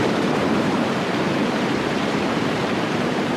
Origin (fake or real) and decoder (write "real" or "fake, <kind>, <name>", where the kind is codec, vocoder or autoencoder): fake, vocoder, BigVGAN v2